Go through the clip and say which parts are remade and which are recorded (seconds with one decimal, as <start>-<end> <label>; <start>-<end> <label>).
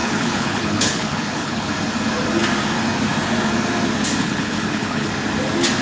0.0-1.7 remade; 1.7-4.2 recorded; 4.2-5.1 remade; 5.1-5.8 recorded